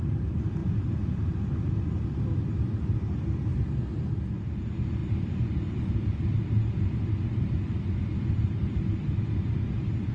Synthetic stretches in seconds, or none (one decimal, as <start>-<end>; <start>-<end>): none